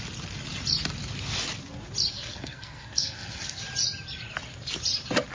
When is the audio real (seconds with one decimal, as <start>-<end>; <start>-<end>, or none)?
0.0-2.1; 3.6-5.3